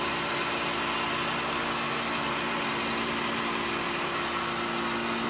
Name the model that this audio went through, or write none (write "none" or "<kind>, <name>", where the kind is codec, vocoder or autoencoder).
none